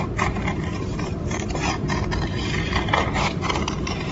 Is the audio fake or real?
fake